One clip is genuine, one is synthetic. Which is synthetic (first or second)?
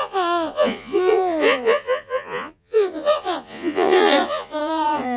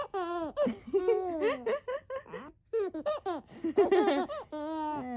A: first